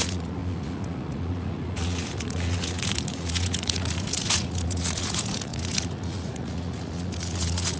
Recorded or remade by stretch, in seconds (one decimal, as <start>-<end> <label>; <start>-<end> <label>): 0.0-7.8 remade